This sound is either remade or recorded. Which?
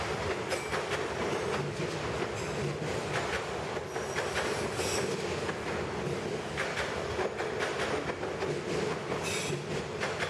recorded